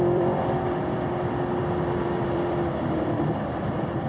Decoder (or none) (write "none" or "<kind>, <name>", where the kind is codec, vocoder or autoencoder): vocoder, BigVGAN v2